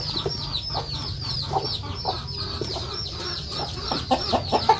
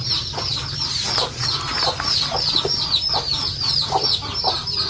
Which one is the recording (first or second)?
first